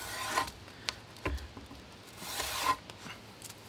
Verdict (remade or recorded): recorded